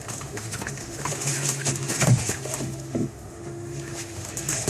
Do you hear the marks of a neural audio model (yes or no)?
yes